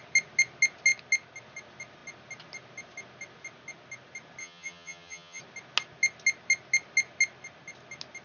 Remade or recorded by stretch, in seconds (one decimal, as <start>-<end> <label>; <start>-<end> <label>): 0.0-4.4 recorded; 4.4-5.4 remade; 5.4-8.2 recorded